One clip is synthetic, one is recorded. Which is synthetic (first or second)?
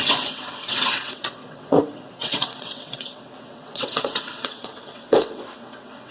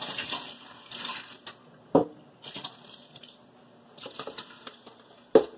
first